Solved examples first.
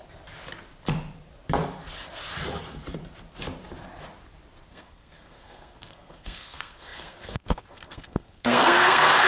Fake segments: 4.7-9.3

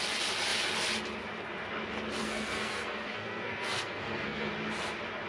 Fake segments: 2.2-4.5

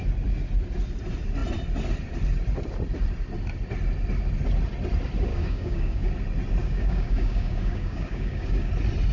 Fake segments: 5.3-6.1; 6.6-8.7

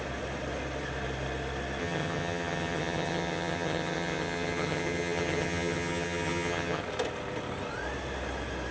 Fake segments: 1.8-6.8

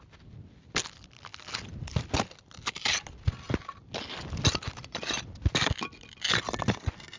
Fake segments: none

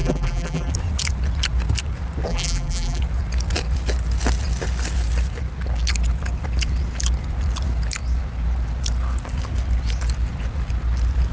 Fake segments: 0.0-0.7; 2.3-3.0

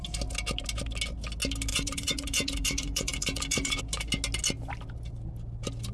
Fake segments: 1.7-3.8